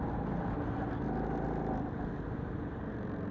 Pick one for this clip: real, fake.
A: real